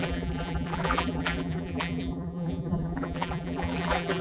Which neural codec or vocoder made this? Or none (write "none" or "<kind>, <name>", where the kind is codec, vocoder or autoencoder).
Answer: vocoder, BigVGAN v2